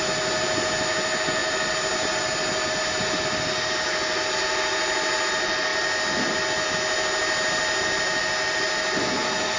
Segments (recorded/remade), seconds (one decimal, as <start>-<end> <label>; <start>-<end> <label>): 0.0-9.6 recorded